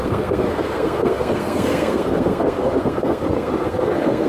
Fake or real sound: fake